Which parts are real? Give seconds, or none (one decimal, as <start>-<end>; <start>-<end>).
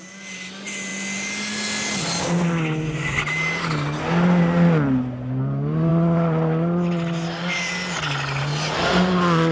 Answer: 0.0-9.5